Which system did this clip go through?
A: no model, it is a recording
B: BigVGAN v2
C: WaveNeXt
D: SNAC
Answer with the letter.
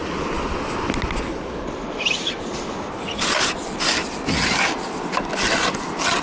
A